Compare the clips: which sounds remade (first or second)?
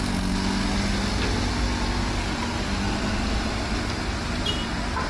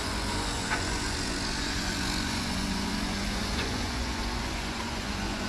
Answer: second